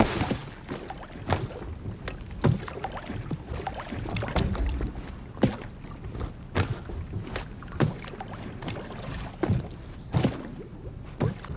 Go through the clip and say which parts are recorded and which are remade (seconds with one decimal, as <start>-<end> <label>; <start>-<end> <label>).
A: 0.0-11.6 recorded